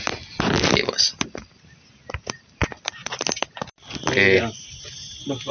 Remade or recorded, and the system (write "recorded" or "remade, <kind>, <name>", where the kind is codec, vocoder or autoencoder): recorded